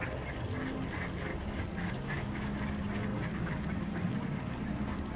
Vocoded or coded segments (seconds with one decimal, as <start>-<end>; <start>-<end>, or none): 1.3-2.5